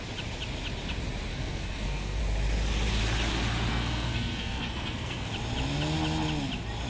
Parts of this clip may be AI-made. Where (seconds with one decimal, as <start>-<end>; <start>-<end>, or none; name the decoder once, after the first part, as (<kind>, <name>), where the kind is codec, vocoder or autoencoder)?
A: 1.3-2.2 (codec, SNAC); 3.7-5.3